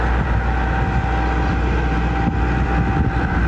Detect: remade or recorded recorded